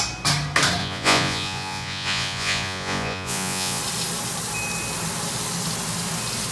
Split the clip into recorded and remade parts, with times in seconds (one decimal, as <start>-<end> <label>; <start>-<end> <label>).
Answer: 0.0-0.8 recorded; 0.8-3.8 remade; 3.8-6.5 recorded